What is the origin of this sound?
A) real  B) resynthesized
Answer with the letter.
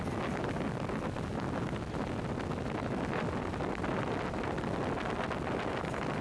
A